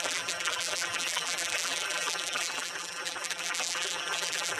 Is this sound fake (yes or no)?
yes